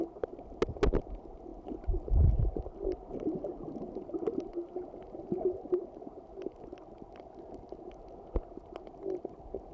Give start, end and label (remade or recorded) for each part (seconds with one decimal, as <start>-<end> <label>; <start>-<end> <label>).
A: 0.0-9.7 recorded